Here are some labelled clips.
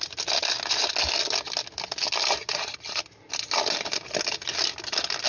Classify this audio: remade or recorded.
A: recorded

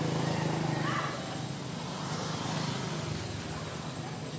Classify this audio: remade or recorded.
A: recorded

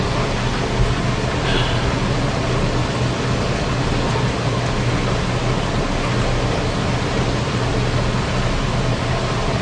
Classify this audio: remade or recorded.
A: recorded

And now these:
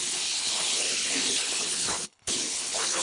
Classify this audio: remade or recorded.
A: remade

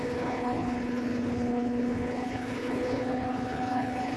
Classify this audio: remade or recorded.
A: remade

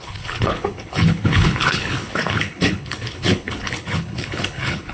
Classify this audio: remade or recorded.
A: remade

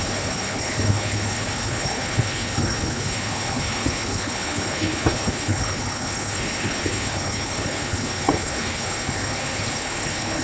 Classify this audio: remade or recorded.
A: remade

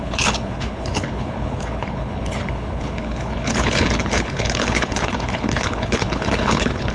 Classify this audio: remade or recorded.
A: remade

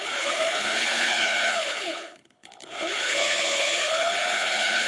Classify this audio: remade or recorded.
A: remade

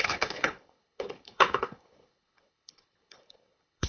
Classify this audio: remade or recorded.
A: remade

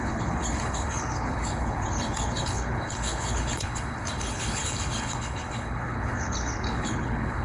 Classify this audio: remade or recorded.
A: remade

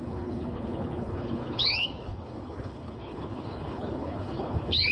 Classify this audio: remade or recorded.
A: remade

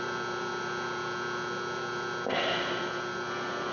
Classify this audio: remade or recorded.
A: recorded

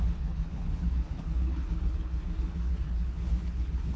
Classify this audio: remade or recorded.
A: remade